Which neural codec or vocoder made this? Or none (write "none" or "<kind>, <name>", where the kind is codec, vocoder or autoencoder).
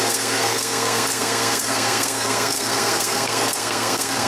codec, SNAC